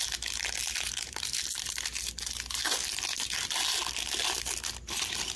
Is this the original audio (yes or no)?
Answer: yes